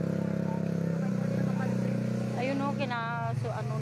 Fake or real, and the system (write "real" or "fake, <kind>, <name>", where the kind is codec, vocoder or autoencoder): real